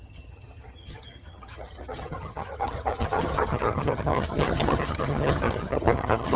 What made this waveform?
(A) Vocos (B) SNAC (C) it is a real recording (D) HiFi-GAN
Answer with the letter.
D